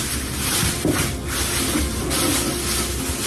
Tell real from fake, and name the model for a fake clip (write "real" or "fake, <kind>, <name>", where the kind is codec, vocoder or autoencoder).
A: real